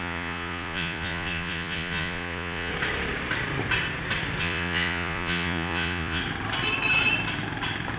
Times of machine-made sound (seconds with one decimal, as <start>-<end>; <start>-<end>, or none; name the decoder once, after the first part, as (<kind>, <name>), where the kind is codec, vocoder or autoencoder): 0.0-2.7 (vocoder, Vocos); 4.4-6.2